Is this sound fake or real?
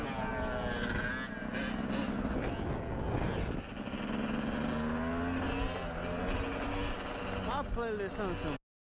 real